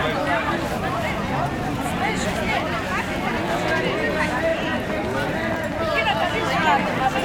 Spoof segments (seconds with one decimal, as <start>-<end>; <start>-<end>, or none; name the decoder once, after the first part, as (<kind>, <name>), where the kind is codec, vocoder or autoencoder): none